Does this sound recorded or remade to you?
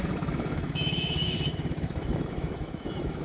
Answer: remade